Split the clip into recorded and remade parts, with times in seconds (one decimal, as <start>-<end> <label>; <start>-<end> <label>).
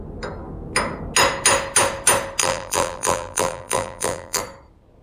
0.0-2.4 recorded; 2.4-4.4 remade; 4.4-5.0 recorded